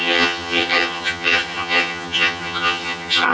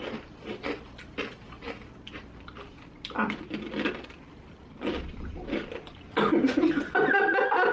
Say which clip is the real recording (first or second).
second